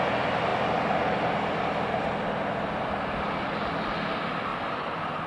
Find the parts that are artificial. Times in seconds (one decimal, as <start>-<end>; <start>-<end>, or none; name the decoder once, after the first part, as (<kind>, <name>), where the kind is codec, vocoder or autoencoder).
none